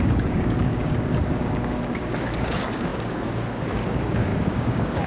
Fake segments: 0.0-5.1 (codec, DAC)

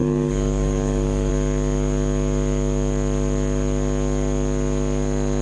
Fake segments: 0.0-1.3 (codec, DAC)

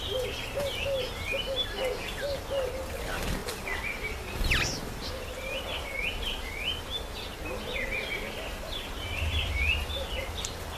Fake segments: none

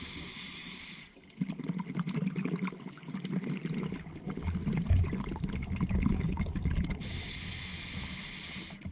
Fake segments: 6.1-6.7 (codec, DAC)